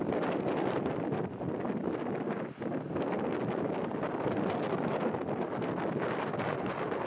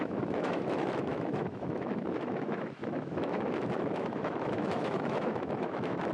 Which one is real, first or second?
first